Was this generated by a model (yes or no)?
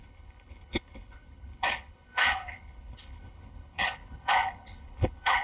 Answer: yes